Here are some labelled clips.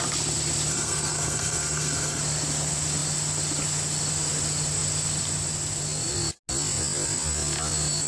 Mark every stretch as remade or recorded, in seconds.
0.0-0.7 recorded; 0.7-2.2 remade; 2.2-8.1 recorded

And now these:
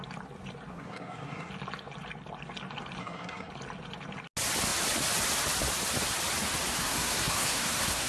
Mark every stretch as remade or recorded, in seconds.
0.0-0.7 recorded; 0.7-1.5 remade; 1.5-3.0 recorded; 3.0-3.5 remade; 3.5-6.8 recorded; 6.8-8.1 remade

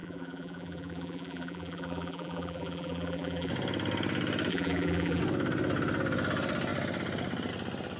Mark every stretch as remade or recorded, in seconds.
0.0-3.5 remade; 3.5-4.5 recorded; 4.5-5.2 remade; 5.2-8.0 recorded